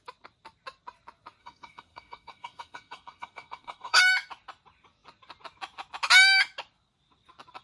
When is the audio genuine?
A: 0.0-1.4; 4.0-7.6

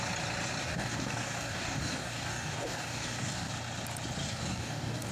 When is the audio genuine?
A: 0.0-0.6; 3.5-4.2

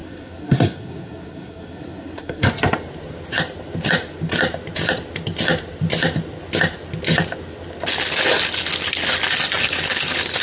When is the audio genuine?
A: 2.5-10.4

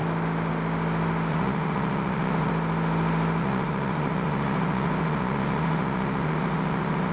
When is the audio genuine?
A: 0.0-1.3; 2.5-3.4

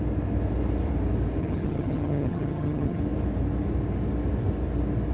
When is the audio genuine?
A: 0.0-1.4; 3.0-5.1